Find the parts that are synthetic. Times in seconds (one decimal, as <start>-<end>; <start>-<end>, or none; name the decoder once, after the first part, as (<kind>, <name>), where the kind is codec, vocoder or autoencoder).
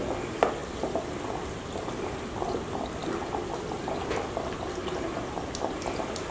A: none